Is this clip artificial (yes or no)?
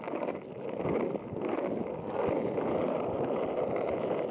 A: no